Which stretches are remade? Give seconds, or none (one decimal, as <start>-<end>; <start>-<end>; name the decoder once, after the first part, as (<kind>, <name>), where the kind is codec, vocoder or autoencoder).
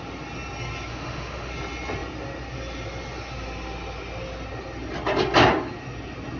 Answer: 0.9-1.5 (autoencoder, DAC-VAE)